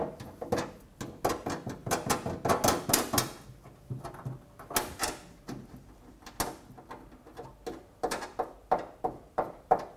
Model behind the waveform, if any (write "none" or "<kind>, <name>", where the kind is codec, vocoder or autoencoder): none